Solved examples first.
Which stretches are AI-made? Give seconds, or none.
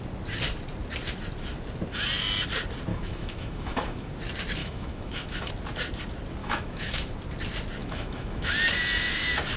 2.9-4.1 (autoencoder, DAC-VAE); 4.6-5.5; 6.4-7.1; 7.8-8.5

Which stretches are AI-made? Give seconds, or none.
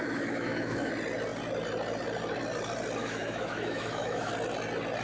0.0-0.9 (autoencoder, DAC-VAE); 3.0-4.3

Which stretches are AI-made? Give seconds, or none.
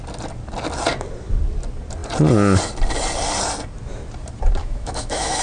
4.6-5.4 (autoencoder, DAC-VAE)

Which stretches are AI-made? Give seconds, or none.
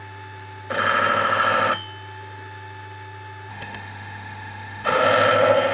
3.5-5.0 (autoencoder, DAC-VAE)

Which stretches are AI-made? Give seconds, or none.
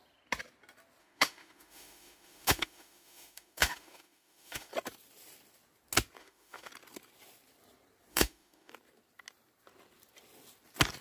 1.0-4.7 (autoencoder, DAC-VAE); 6.2-6.7; 8.1-8.7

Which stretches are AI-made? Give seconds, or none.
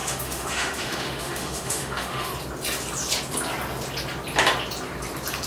0.0-2.3 (autoencoder, DAC-VAE)